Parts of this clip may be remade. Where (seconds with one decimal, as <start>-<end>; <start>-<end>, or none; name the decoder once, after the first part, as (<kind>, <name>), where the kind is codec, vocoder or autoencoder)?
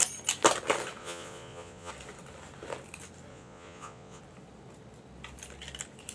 1.0-1.9 (vocoder, Vocos); 3.3-4.2